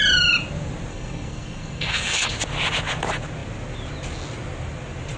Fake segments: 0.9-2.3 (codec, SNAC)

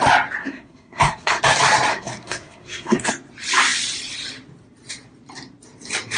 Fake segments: 0.4-1.4 (codec, SNAC); 1.9-3.1

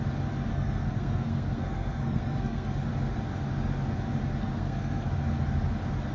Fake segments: 0.5-2.9 (codec, SNAC); 4.4-5.1

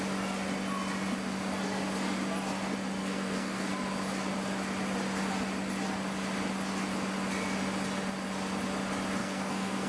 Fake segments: 3.0-3.7 (codec, SNAC); 9.2-9.9

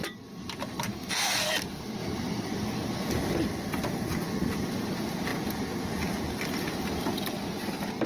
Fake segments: 0.9-1.5 (codec, SNAC)

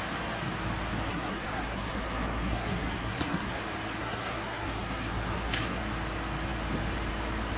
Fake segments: 1.1-3.6 (codec, SNAC); 4.0-5.8